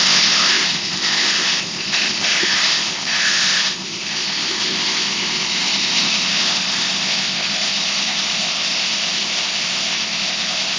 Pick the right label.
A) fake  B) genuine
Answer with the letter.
A